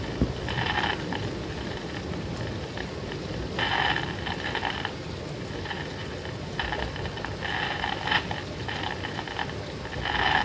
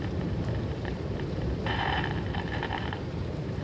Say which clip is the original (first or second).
first